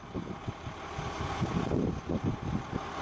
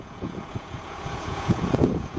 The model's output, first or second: second